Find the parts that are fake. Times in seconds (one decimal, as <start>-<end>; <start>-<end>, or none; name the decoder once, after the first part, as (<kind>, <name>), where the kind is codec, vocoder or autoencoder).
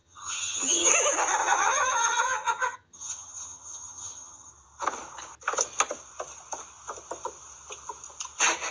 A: 0.0-0.9 (vocoder, HiFi-GAN); 1.4-4.5